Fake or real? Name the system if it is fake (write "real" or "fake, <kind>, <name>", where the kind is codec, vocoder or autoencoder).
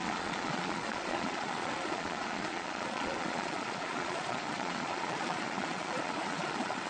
fake, vocoder, Vocos